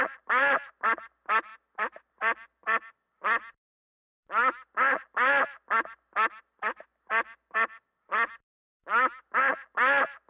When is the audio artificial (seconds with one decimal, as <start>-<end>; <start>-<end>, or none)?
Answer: 0.0-1.5; 2.1-10.3